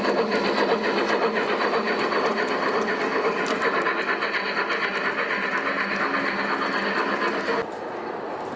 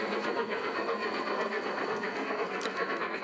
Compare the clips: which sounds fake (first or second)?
second